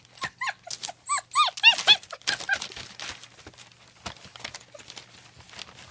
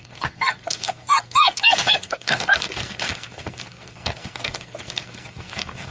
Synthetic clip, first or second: second